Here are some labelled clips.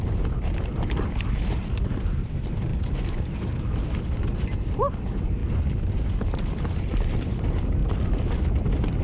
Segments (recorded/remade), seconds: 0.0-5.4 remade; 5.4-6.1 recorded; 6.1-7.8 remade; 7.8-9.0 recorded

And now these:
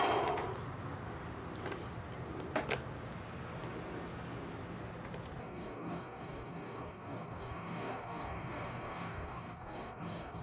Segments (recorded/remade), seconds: 0.0-5.4 recorded; 5.4-10.4 remade

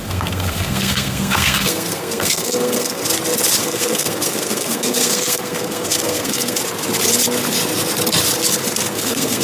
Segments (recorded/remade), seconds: 0.0-3.0 remade; 3.0-3.6 recorded; 3.6-6.6 remade; 6.6-8.9 recorded; 8.9-9.4 remade

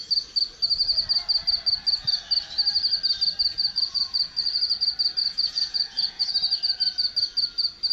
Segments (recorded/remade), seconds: 0.0-3.5 recorded; 3.5-4.6 remade; 4.6-5.2 recorded; 5.2-6.3 remade; 6.3-7.9 recorded

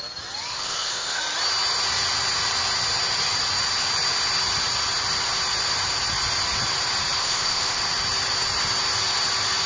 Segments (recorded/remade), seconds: 0.0-0.5 recorded; 0.5-1.2 remade; 1.2-7.2 recorded; 7.2-7.8 remade; 7.8-9.7 recorded

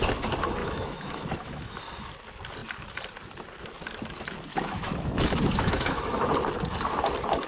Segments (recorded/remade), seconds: 0.0-0.6 recorded; 0.6-1.8 remade; 1.8-4.5 recorded; 4.5-6.3 remade; 6.3-7.5 recorded